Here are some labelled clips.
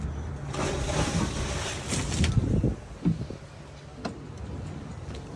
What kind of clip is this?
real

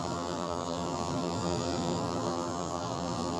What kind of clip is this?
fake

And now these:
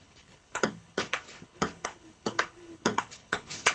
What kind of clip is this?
fake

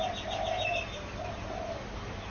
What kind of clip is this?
real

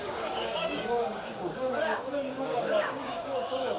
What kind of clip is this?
fake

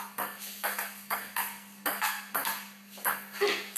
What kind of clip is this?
fake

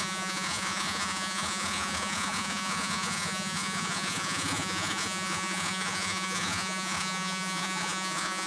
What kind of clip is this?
fake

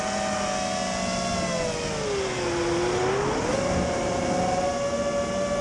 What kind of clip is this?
real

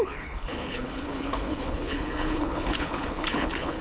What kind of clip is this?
fake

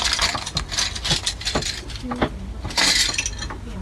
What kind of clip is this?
real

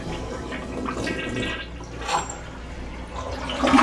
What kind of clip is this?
real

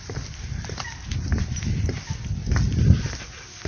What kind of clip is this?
real